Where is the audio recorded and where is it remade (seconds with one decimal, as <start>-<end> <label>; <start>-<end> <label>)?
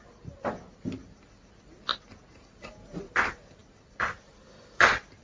0.0-5.2 recorded